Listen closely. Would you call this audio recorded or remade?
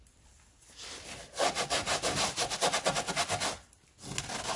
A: recorded